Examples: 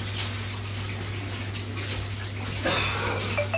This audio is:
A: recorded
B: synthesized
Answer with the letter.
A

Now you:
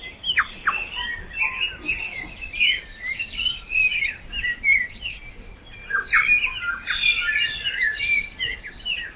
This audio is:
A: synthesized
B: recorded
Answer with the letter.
B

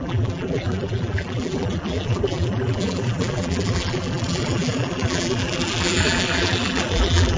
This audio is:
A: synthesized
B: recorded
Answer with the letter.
A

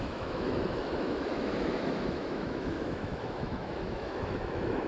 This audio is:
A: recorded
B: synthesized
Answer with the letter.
B